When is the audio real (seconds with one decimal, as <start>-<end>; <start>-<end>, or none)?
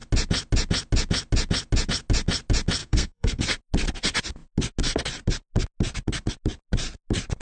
0.0-2.8; 3.4-7.4